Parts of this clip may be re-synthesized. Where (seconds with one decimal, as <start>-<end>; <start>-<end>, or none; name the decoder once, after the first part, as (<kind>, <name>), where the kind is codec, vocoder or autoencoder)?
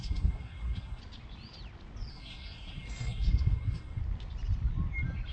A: 0.0-1.0 (codec, SNAC); 2.1-4.0